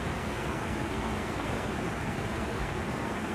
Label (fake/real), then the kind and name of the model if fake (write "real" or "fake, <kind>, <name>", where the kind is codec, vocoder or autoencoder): fake, codec, SNAC